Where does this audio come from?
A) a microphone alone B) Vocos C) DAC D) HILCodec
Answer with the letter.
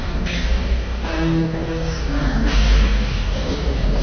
C